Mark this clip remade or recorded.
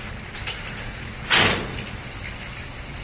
recorded